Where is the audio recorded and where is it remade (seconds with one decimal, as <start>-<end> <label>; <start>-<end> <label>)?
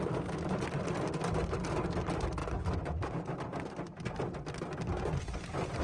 0.0-5.8 recorded